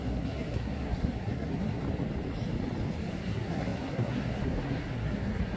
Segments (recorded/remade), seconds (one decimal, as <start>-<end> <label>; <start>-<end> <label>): 0.0-1.8 remade; 1.8-3.1 recorded; 3.1-5.6 remade